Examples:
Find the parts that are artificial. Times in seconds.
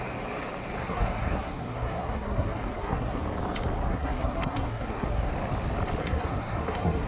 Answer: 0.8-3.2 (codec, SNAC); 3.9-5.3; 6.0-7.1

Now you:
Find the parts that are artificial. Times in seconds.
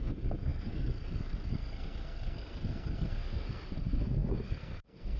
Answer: 0.0-5.2 (codec, SNAC)